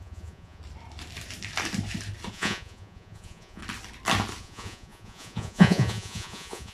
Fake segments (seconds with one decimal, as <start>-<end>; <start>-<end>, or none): 0.0-0.6; 2.3-3.6; 4.4-6.7